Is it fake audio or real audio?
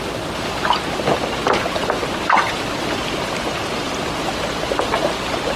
real